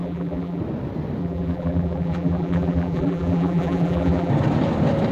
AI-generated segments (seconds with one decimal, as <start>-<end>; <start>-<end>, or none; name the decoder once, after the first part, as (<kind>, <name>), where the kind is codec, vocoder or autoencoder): 0.0-0.6 (vocoder, BigVGAN v2); 1.2-4.3